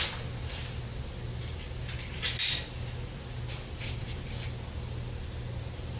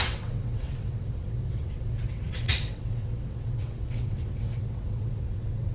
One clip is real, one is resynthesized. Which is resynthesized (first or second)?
second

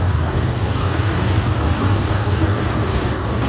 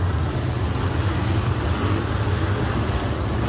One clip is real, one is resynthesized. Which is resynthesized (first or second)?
first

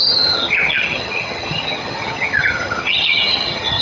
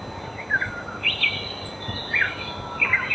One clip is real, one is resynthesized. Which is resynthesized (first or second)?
first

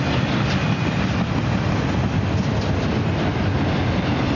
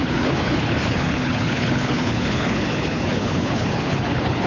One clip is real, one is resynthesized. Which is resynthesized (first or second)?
second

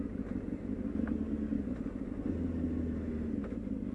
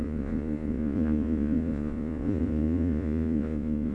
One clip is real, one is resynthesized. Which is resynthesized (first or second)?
second